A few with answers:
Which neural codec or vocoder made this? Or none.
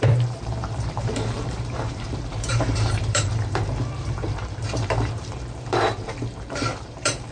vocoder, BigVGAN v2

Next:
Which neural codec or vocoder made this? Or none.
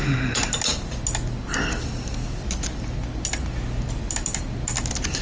none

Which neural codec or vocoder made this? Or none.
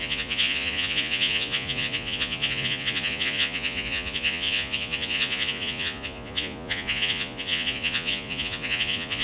vocoder, Vocos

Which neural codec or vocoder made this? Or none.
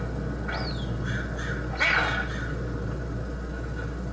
none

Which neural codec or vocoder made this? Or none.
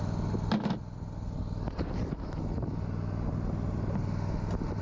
none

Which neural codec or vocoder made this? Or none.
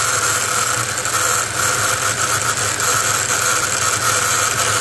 none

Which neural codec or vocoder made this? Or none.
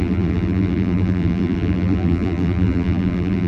vocoder, BigVGAN v2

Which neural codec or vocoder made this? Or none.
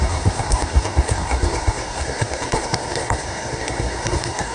codec, SNAC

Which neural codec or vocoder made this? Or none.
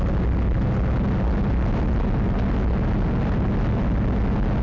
none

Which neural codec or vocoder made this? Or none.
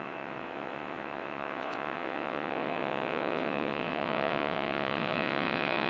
vocoder, WaveNeXt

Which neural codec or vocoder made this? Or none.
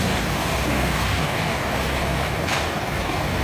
codec, DAC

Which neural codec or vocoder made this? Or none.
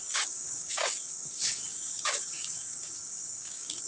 codec, DAC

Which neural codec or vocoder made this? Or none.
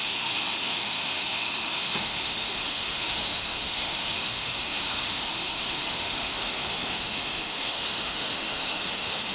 autoencoder, DAC-VAE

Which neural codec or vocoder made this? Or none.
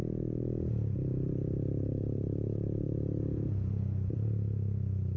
none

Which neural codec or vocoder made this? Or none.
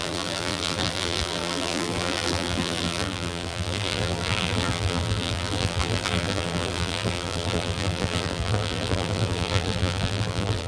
vocoder, BigVGAN v2